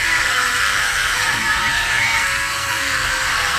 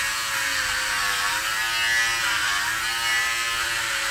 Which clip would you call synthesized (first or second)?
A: first